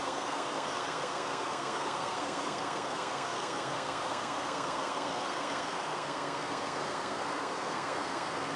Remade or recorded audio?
remade